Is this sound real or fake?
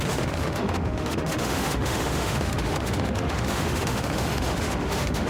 fake